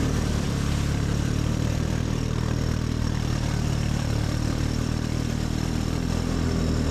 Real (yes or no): no